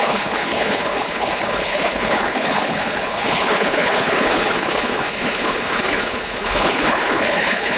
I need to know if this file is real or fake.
fake